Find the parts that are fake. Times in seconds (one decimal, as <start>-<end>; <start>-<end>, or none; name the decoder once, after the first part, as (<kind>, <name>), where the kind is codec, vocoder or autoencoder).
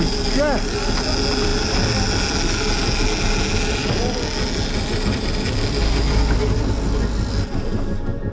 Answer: none